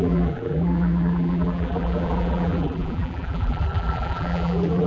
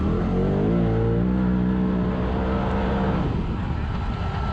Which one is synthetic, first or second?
first